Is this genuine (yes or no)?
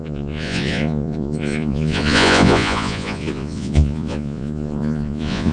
no